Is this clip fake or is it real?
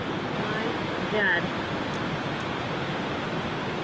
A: real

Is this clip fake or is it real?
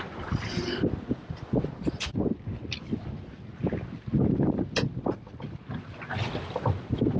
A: real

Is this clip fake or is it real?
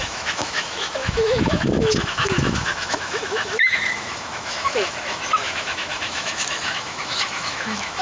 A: fake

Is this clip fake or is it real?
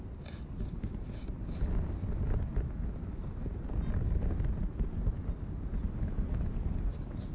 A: real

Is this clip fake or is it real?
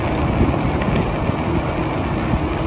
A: real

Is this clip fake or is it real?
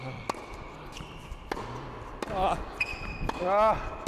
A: real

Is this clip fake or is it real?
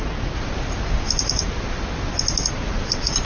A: real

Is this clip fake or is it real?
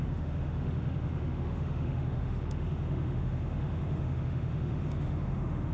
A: fake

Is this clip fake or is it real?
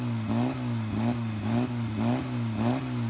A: real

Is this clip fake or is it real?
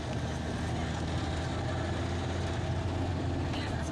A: real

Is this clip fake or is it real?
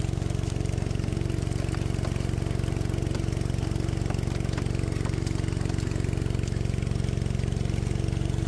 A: real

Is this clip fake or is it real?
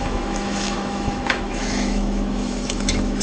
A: fake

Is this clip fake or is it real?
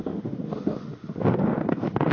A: fake